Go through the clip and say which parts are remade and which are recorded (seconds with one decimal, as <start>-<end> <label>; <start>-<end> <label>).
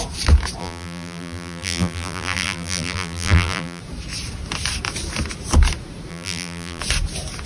0.0-0.6 recorded; 0.6-3.8 remade; 3.8-6.1 recorded; 6.1-6.8 remade; 6.8-7.5 recorded